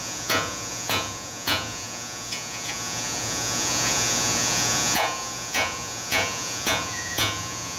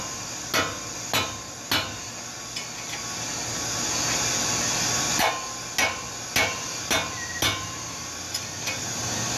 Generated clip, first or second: first